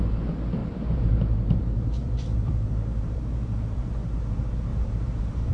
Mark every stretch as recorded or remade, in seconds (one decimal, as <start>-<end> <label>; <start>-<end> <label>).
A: 0.0-0.6 recorded; 0.6-3.9 remade; 3.9-4.7 recorded; 4.7-5.5 remade